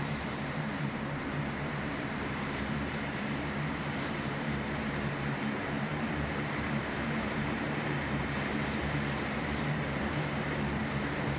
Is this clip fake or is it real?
fake